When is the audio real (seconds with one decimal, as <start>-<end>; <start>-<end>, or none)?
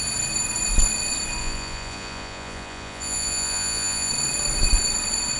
0.0-1.4; 4.1-5.4